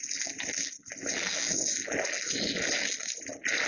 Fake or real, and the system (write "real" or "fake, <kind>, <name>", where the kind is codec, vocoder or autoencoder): real